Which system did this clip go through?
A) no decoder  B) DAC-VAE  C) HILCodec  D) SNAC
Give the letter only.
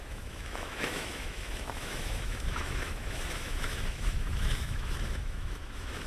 B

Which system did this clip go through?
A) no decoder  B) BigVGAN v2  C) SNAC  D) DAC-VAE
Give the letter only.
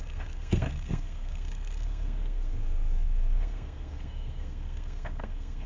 C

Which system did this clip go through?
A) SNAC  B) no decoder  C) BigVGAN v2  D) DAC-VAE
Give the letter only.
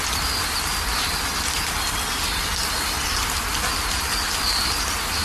B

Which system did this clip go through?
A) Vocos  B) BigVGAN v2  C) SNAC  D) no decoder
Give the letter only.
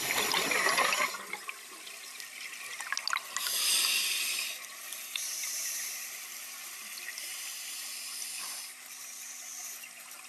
D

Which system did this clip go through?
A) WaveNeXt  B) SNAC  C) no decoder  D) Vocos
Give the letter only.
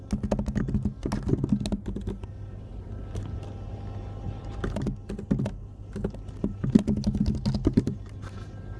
C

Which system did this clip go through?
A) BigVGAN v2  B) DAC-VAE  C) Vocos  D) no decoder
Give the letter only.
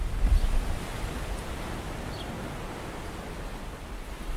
D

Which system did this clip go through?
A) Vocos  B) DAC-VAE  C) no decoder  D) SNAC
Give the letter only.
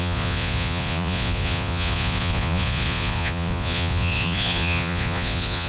A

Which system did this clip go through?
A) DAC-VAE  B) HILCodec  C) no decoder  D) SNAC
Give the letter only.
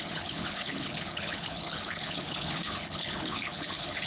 B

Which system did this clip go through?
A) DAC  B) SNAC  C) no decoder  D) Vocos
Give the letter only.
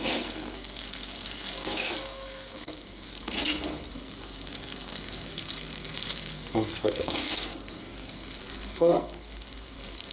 B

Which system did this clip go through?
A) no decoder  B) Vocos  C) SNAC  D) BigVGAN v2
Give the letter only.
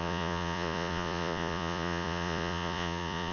B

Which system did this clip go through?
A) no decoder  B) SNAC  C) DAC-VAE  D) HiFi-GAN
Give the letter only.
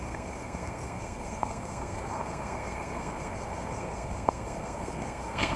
B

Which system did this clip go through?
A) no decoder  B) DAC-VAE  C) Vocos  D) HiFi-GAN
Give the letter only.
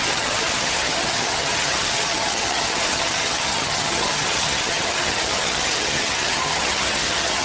D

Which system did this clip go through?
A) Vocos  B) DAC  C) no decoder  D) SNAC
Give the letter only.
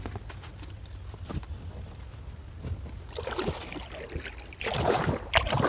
C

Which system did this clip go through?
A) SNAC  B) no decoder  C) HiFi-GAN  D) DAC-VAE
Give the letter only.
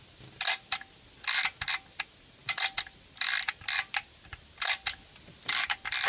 B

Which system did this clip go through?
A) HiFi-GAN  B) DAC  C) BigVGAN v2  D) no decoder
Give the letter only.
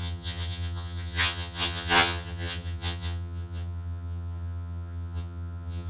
A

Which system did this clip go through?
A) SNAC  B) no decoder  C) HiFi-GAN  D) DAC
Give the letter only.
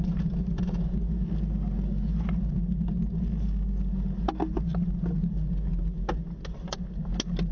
B